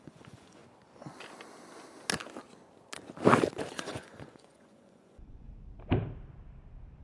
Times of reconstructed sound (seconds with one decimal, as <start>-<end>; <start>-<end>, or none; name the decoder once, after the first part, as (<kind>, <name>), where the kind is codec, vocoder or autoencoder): 0.0-0.6 (vocoder, Vocos); 3.7-5.5